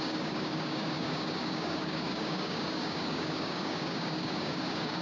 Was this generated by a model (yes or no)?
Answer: yes